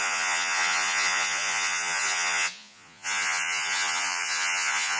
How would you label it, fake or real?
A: fake